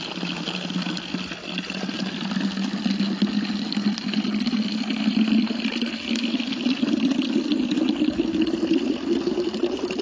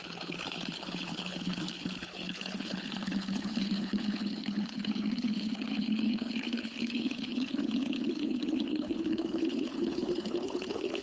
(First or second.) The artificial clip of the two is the second